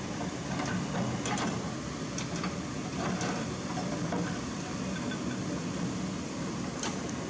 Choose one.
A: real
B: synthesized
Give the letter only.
A